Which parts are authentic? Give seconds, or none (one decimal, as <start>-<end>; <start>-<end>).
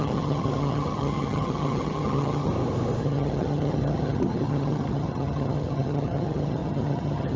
2.5-3.0